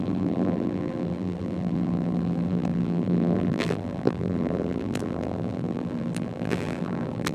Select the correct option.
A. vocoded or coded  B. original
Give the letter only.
A